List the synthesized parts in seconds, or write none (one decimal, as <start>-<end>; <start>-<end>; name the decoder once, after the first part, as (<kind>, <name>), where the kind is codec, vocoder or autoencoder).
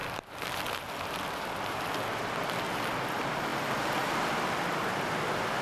0.0-5.6 (vocoder, BigVGAN v2)